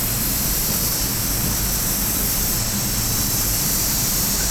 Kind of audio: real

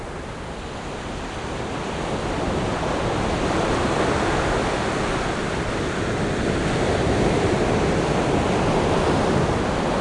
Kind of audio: real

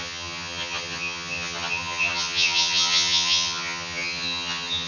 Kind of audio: fake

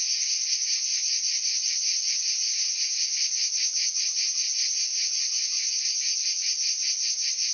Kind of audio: real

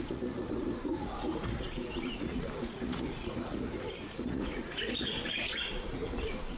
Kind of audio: fake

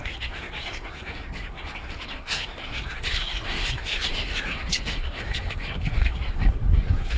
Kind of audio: fake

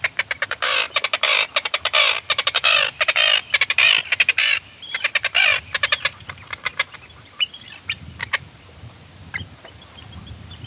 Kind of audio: fake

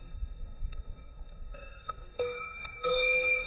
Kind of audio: fake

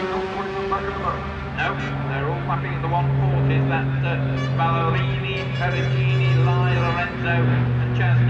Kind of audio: real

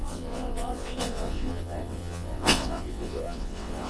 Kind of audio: fake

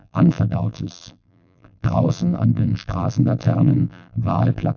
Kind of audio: fake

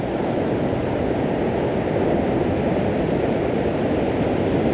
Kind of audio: real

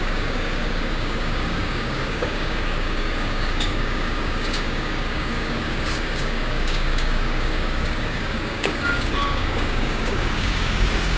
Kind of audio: fake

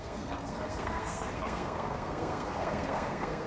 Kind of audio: fake